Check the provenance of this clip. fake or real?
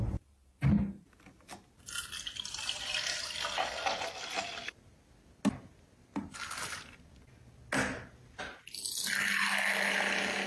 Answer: real